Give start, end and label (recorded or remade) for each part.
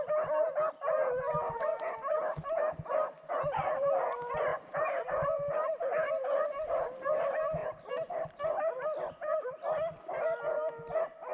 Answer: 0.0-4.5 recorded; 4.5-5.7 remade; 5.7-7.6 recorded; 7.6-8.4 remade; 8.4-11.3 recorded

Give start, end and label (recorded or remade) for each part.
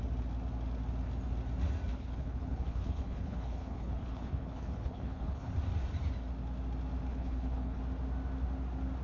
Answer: 0.0-1.9 recorded; 1.9-5.5 remade; 5.5-7.1 recorded; 7.1-7.8 remade; 7.8-9.0 recorded